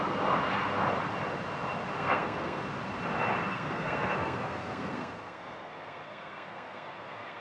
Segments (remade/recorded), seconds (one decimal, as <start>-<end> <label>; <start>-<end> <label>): 0.0-2.0 recorded; 2.0-2.6 remade; 2.6-3.5 recorded; 3.5-7.4 remade